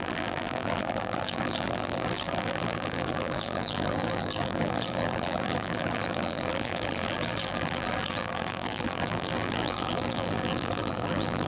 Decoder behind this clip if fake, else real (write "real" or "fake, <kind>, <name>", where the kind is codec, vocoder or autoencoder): fake, vocoder, BigVGAN v2